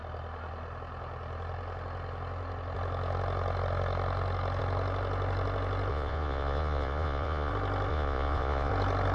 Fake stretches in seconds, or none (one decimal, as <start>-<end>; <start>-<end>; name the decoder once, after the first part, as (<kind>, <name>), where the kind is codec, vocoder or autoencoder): 5.9-7.5 (vocoder, Vocos); 7.9-8.7